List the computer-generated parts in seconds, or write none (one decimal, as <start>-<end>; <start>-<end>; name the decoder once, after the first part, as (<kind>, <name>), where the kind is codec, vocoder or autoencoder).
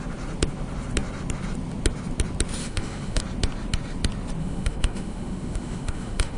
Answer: 2.6-3.2 (autoencoder, DAC-VAE); 4.4-6.4